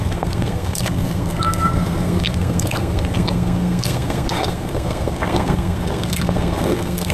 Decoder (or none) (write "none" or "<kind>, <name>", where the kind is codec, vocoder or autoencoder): codec, SNAC